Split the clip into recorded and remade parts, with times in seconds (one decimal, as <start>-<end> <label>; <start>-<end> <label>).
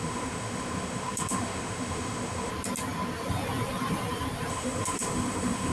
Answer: 0.0-2.5 remade; 2.5-4.5 recorded; 4.5-5.7 remade